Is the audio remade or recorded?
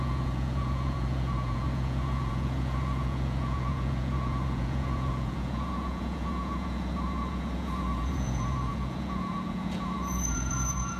remade